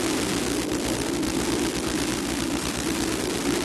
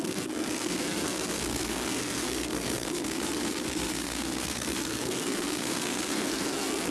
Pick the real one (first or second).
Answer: first